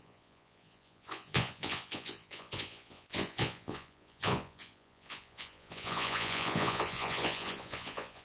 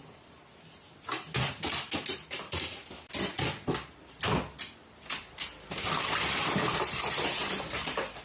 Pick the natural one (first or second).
second